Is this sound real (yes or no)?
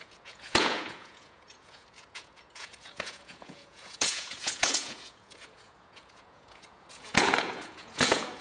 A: no